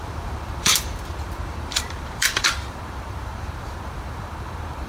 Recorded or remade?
remade